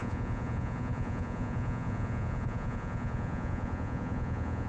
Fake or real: fake